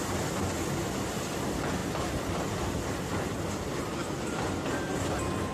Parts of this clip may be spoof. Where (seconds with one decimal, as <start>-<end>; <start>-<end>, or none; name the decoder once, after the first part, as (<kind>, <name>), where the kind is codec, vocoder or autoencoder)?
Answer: none